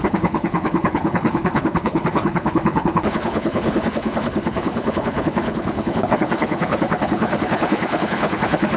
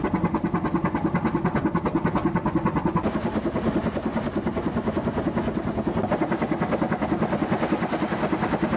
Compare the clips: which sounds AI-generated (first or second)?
first